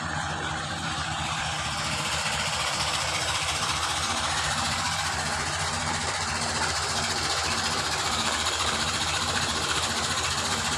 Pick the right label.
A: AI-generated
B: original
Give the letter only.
A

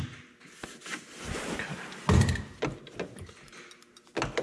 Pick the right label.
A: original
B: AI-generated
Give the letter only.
A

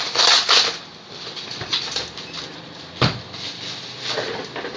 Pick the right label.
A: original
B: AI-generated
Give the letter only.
A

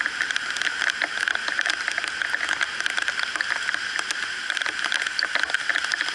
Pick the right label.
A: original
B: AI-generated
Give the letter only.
A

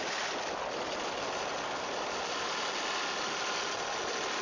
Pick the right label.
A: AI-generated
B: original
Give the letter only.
B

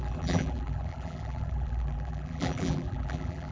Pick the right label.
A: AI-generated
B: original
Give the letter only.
A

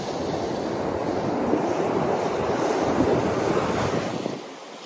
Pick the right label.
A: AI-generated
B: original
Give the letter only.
B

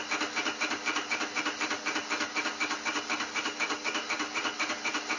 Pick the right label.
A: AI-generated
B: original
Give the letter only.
B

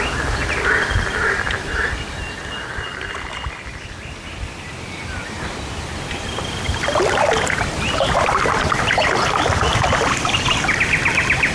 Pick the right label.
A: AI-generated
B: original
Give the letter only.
B